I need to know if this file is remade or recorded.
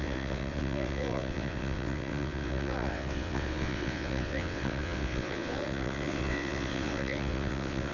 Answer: remade